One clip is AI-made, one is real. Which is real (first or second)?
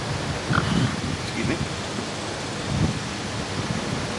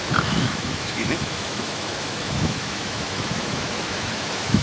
first